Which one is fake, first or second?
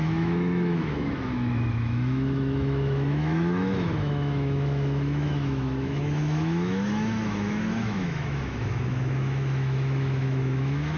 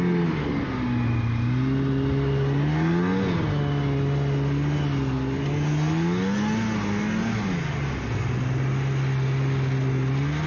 first